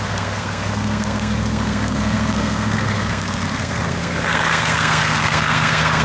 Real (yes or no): no